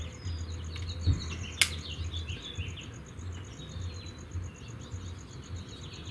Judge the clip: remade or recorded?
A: recorded